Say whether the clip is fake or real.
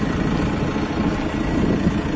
real